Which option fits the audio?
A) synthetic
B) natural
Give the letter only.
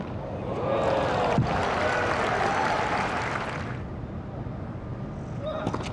B